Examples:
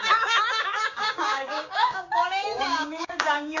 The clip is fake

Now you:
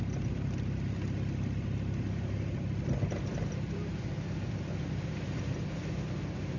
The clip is real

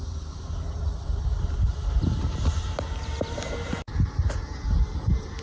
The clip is fake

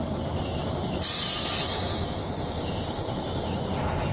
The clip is real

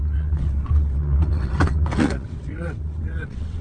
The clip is fake